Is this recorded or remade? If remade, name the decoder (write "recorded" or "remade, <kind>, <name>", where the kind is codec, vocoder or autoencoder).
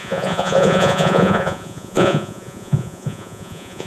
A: remade, vocoder, Vocos